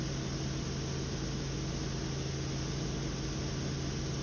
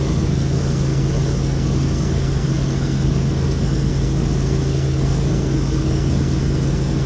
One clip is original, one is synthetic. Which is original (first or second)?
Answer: first